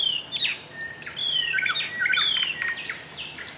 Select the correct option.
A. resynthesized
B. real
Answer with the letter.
B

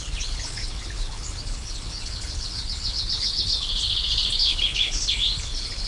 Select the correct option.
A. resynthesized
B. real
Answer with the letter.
A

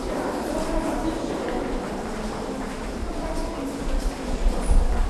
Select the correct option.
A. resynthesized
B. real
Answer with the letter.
B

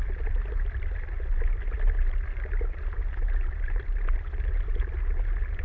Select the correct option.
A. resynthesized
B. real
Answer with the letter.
B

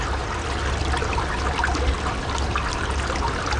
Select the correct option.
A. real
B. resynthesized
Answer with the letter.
A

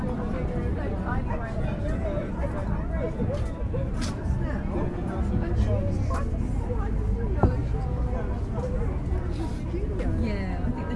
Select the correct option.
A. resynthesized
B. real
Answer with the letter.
B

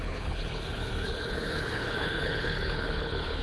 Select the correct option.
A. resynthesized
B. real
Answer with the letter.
A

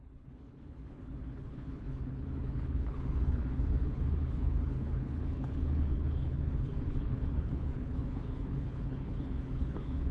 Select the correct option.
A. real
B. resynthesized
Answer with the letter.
B